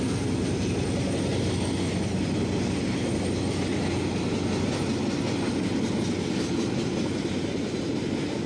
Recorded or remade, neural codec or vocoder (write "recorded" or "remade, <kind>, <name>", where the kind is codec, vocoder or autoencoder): recorded